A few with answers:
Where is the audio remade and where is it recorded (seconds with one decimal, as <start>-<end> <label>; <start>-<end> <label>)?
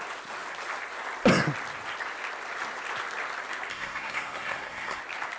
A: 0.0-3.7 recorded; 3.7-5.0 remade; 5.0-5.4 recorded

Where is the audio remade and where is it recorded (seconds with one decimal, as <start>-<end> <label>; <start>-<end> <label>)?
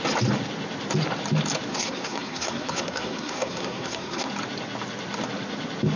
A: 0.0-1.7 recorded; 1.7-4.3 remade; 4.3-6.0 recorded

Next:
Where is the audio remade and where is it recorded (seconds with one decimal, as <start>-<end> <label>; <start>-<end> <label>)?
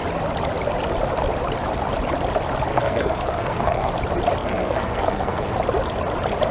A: 0.0-2.7 recorded; 2.7-3.9 remade; 3.9-4.4 recorded; 4.4-5.5 remade; 5.5-6.5 recorded